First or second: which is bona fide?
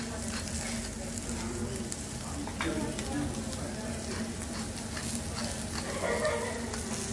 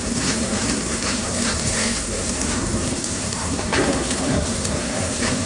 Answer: first